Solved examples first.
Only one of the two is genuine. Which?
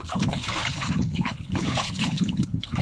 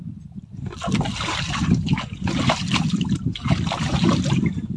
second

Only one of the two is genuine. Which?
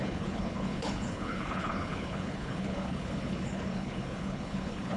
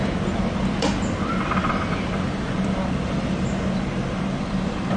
second